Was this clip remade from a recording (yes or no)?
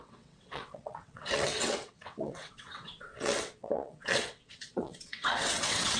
yes